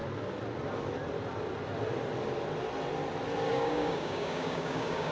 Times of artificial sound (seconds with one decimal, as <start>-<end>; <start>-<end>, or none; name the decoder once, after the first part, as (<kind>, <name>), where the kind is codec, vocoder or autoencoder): 3.5-5.1 (codec, DAC)